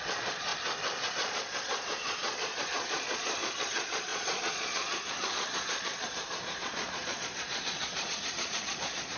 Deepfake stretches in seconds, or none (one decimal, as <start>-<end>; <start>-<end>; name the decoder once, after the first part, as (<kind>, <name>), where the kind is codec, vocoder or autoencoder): 0.0-0.5 (vocoder, Vocos); 1.1-9.2